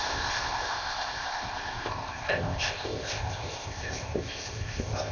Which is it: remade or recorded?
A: remade